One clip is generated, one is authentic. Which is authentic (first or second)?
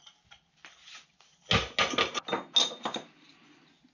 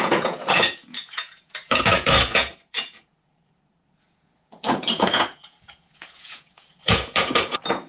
first